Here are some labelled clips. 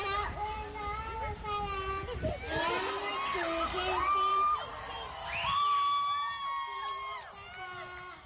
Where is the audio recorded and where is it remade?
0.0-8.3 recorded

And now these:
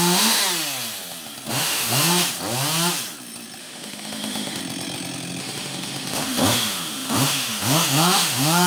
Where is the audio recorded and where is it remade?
0.0-0.4 remade; 0.4-1.5 recorded; 1.5-2.2 remade; 2.2-3.6 recorded; 3.6-4.6 remade; 4.6-5.4 recorded; 5.4-8.7 remade

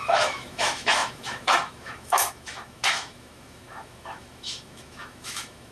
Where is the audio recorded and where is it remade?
0.0-5.7 remade

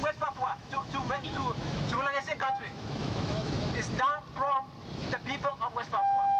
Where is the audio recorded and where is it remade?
0.0-3.7 remade; 3.7-5.5 recorded; 5.5-6.4 remade

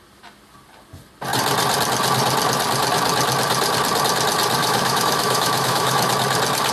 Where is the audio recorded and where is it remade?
0.0-4.6 recorded; 4.6-6.1 remade; 6.1-6.7 recorded